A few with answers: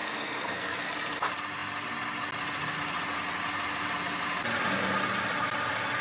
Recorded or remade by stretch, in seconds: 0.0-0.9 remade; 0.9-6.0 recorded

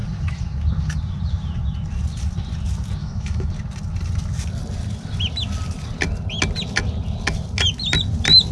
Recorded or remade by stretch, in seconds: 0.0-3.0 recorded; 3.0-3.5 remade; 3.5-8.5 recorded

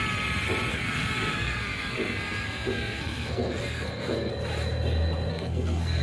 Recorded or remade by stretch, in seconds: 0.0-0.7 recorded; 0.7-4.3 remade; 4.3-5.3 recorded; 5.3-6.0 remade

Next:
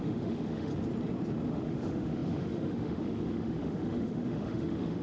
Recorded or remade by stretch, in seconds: 0.0-0.7 remade; 0.7-1.5 recorded; 1.5-5.0 remade